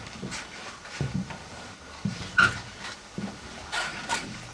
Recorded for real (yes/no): no